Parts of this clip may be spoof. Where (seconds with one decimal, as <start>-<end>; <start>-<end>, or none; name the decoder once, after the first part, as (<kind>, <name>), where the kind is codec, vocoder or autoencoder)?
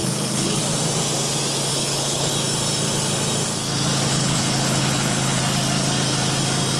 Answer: 0.0-0.6 (codec, HILCodec); 1.7-2.3; 4.1-5.4